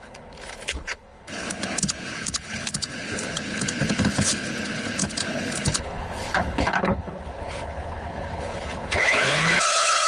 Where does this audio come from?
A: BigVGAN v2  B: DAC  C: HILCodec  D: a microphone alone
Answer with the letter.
C